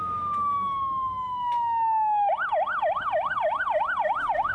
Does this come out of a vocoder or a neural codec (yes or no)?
no